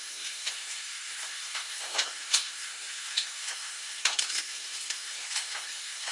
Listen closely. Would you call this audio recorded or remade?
remade